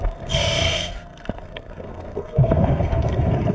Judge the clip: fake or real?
fake